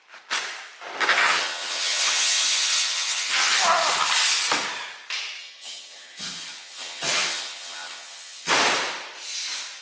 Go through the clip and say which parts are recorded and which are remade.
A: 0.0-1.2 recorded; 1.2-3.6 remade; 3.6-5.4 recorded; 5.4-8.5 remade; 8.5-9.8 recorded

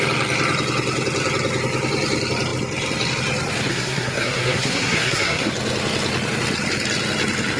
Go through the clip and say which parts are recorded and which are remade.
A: 0.0-3.7 recorded; 3.7-5.5 remade; 5.5-7.6 recorded

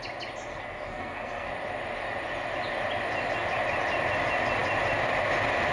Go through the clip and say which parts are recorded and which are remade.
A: 0.0-0.5 recorded; 0.5-1.5 remade; 1.5-5.7 recorded

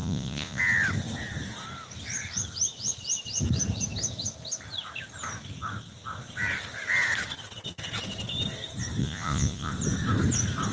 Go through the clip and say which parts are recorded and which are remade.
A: 0.0-0.6 remade; 0.6-9.0 recorded; 9.0-9.7 remade; 9.7-10.7 recorded

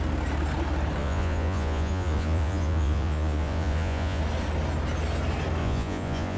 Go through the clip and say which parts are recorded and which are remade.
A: 0.0-1.0 recorded; 1.0-4.2 remade; 4.2-5.6 recorded; 5.6-6.4 remade

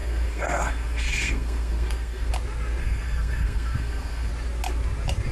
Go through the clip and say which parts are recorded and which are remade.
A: 0.0-2.3 remade; 2.3-2.8 recorded; 2.8-4.3 remade; 4.3-5.3 recorded